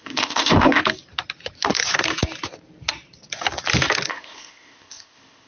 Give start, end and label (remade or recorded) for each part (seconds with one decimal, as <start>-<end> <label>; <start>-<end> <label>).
0.0-0.8 remade; 0.8-4.1 recorded; 4.1-5.5 remade